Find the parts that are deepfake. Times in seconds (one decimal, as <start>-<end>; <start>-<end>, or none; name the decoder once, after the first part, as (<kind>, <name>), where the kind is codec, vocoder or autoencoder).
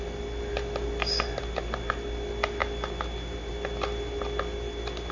none